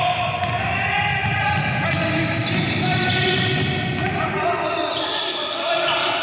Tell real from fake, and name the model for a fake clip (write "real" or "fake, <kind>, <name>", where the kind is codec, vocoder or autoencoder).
real